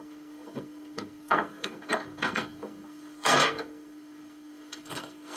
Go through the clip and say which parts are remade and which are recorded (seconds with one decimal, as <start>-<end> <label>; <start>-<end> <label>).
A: 0.0-5.4 remade